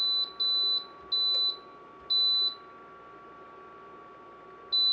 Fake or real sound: real